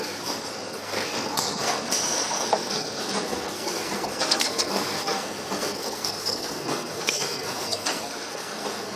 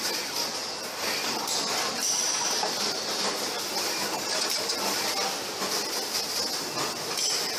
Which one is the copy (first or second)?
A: first